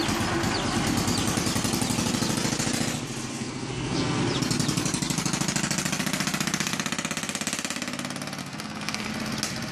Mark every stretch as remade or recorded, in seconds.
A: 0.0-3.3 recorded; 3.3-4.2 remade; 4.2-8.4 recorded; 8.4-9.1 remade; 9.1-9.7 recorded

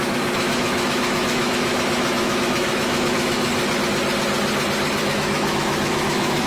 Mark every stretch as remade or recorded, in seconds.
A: 0.0-3.5 remade; 3.5-5.1 recorded; 5.1-6.5 remade